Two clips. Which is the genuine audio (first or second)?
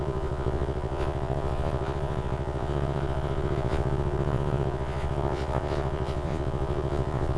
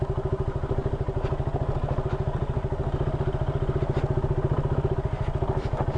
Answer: second